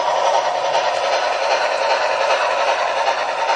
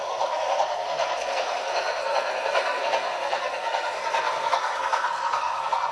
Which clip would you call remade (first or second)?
second